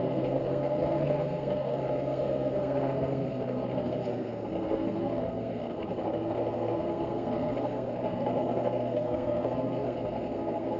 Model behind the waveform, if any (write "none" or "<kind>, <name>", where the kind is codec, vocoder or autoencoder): codec, SNAC